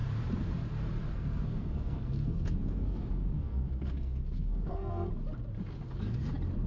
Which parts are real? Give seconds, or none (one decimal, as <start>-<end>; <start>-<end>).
0.0-1.1; 5.1-6.7